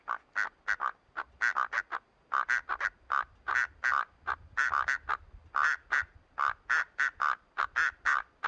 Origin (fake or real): real